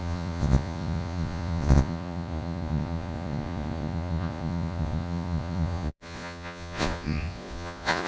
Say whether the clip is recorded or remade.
remade